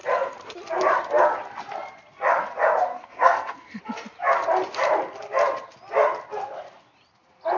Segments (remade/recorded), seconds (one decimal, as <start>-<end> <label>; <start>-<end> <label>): 0.0-2.9 recorded; 2.9-3.8 remade; 3.8-7.6 recorded